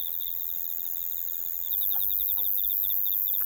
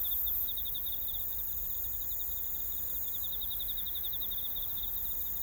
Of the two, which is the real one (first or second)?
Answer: first